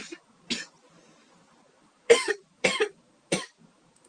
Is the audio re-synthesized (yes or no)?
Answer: yes